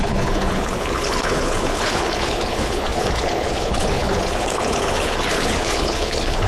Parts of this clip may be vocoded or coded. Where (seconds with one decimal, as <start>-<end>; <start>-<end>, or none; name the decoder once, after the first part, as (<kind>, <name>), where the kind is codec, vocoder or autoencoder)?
0.0-6.5 (codec, HILCodec)